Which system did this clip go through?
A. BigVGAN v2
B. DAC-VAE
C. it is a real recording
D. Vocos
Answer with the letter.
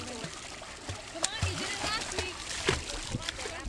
C